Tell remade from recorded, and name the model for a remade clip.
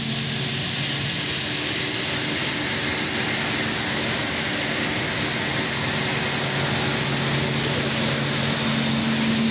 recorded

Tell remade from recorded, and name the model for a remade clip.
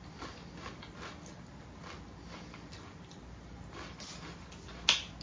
recorded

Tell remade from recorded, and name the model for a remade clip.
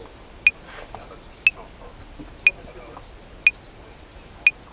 recorded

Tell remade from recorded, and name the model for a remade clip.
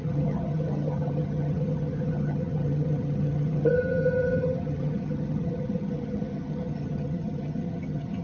remade, vocoder, HiFi-GAN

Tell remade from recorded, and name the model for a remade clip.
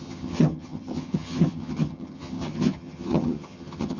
remade, vocoder, HiFi-GAN